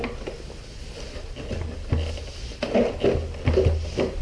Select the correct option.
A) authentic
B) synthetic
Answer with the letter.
A